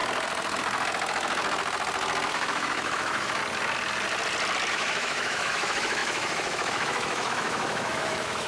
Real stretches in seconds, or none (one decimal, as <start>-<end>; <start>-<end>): 0.0-2.3; 3.4-4.7